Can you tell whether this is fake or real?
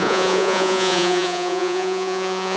fake